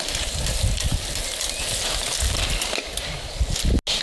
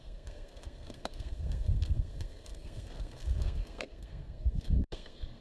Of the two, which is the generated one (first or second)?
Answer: second